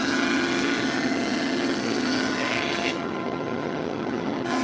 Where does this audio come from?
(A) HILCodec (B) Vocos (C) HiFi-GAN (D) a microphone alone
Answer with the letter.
C